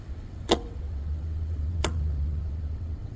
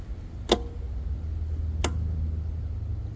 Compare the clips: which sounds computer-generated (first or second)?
first